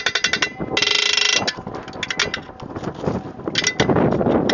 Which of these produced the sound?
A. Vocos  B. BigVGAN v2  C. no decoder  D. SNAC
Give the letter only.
C